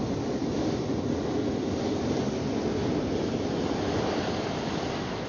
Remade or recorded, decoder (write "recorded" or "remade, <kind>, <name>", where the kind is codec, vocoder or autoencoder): recorded